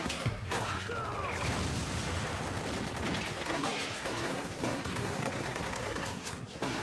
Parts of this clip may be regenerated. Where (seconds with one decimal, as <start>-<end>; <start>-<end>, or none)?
0.0-0.9; 3.3-6.8